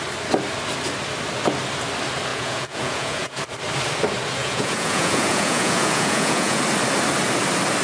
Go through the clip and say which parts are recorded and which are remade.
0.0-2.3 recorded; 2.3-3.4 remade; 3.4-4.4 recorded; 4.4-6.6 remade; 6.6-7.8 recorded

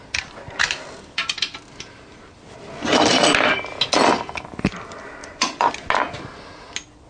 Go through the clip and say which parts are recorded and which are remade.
0.0-5.2 recorded; 5.2-5.7 remade; 5.7-7.1 recorded

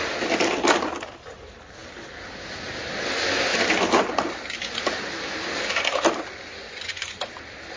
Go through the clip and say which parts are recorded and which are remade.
0.0-6.6 recorded; 6.6-7.3 remade; 7.3-7.8 recorded

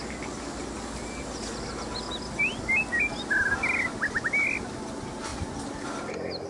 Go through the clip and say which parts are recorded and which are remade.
0.0-6.5 recorded

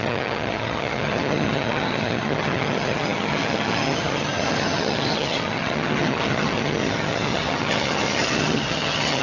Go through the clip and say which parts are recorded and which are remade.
0.0-9.2 remade

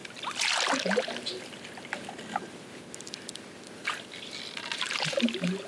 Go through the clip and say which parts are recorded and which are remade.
0.0-5.7 recorded